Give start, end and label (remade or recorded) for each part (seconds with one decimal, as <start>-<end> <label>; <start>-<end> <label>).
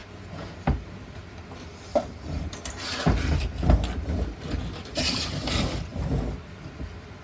0.0-7.2 recorded